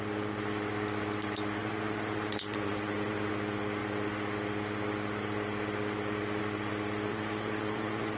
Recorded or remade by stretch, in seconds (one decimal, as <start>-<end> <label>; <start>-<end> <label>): 0.0-1.6 recorded; 1.6-3.3 remade; 3.3-7.1 recorded; 7.1-8.2 remade